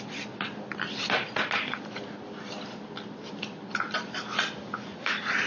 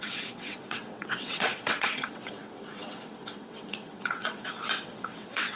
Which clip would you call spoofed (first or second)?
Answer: second